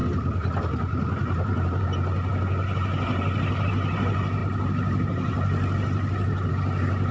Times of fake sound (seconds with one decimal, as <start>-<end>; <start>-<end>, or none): none